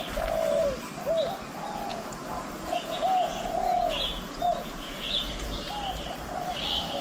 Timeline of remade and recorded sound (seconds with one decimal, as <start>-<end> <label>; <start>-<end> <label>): 0.0-1.9 recorded; 1.9-5.7 remade; 5.7-7.0 recorded